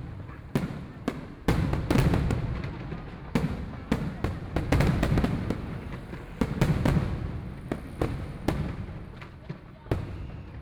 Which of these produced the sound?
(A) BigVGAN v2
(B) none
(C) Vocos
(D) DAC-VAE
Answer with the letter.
B